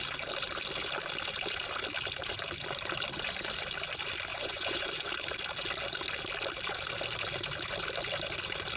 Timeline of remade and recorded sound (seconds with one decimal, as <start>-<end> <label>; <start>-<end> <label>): 0.0-4.3 recorded; 4.3-5.1 remade; 5.1-8.8 recorded